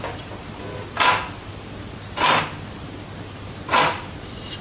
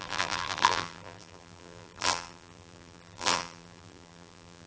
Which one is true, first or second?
first